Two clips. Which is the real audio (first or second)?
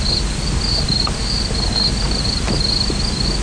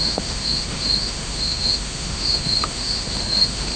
first